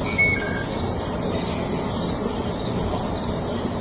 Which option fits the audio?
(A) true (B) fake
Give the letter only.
A